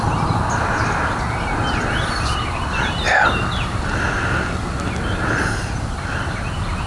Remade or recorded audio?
recorded